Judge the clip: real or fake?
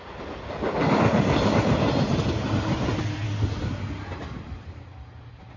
real